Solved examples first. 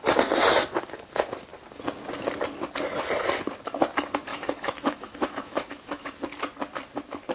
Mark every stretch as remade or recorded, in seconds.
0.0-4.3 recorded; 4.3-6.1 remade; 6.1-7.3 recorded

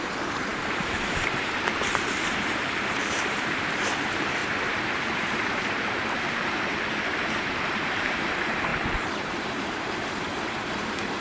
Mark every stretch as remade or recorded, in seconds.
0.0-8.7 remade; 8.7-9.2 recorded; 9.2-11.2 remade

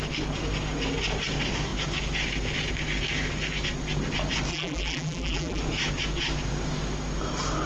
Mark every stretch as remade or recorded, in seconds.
0.0-4.5 recorded; 4.5-5.6 remade; 5.6-7.7 recorded

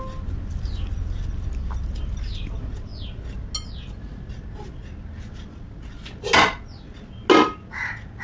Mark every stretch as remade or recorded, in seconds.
0.0-8.2 recorded

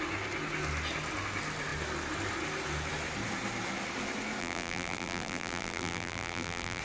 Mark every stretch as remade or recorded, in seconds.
0.0-4.4 recorded; 4.4-6.8 remade

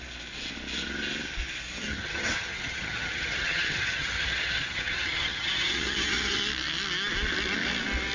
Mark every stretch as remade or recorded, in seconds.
0.0-1.9 recorded; 1.9-6.4 remade; 6.4-8.1 recorded

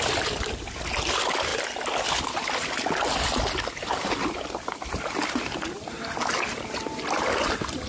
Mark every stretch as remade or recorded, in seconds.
0.0-7.9 recorded